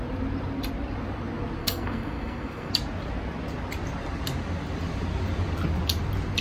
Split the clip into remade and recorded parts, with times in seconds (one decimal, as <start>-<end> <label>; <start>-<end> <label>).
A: 0.0-1.6 recorded; 1.6-2.7 remade; 2.7-6.4 recorded